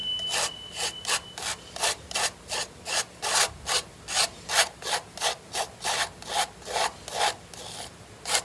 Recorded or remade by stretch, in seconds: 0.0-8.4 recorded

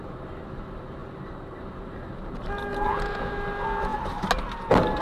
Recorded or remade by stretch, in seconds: 0.0-2.7 recorded; 2.7-3.3 remade; 3.3-5.0 recorded

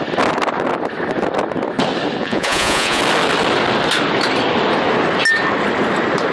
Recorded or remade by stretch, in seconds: 0.0-2.2 recorded; 2.2-3.0 remade; 3.0-6.3 recorded

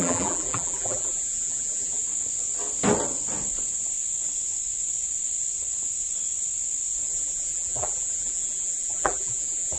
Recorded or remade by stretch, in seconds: 0.0-2.0 remade; 2.0-7.1 recorded; 7.1-9.8 remade

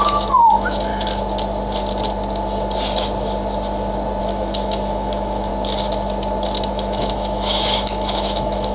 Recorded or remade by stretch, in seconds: 0.0-0.9 remade; 0.9-4.2 recorded; 4.2-5.5 remade; 5.5-6.7 recorded; 6.7-8.7 remade